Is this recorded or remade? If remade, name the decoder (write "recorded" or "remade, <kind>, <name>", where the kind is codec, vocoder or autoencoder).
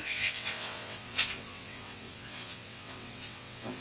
remade, vocoder, WaveNeXt